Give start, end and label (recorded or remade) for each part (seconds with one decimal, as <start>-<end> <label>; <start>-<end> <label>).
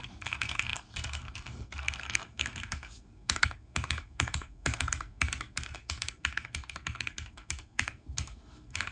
0.0-8.9 remade